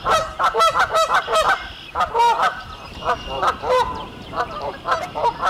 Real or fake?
fake